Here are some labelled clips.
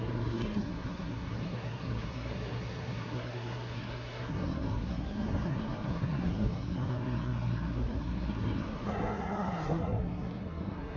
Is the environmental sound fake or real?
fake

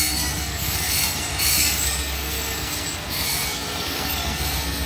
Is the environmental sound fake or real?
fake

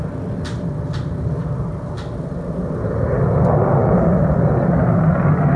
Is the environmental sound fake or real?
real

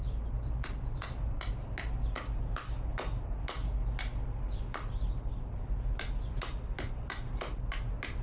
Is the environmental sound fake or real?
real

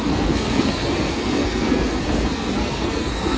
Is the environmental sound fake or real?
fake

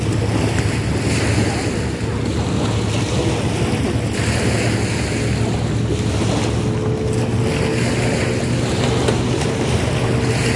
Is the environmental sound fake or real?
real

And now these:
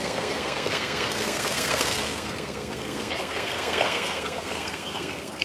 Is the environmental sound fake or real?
fake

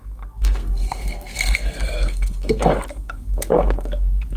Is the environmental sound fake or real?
fake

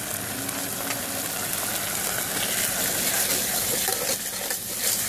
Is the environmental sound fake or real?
real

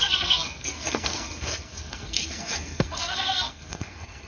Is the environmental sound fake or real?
fake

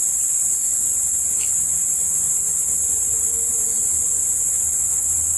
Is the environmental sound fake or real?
real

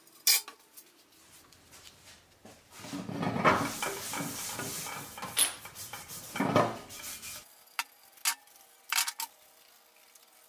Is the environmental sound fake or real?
real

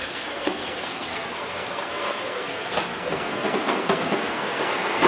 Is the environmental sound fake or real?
fake